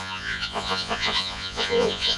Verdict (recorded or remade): remade